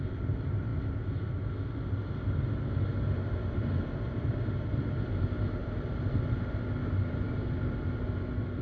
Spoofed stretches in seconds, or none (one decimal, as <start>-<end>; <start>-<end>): none